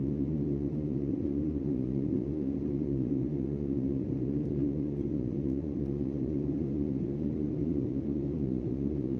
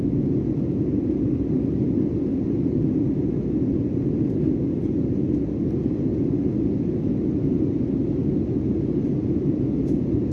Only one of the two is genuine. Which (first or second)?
second